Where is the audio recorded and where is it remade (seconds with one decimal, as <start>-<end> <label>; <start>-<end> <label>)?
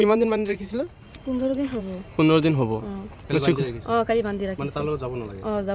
0.0-1.8 remade; 1.8-5.7 recorded